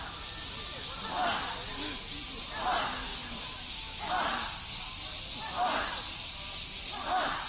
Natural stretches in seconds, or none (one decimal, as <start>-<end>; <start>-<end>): 0.0-3.1; 4.1-7.5